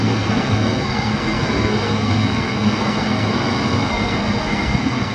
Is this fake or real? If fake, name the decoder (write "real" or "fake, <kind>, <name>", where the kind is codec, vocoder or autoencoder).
fake, codec, SNAC